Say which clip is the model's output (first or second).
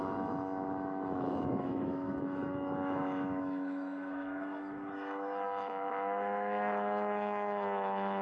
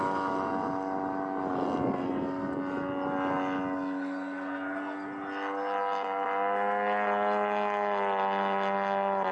first